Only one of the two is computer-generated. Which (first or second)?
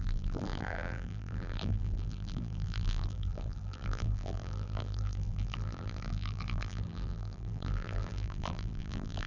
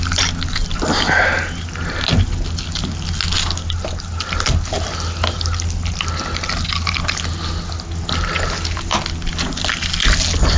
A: first